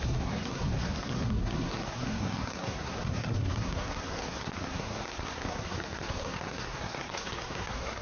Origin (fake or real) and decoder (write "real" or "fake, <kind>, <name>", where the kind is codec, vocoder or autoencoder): fake, codec, SNAC